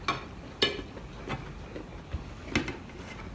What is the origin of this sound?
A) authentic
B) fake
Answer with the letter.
A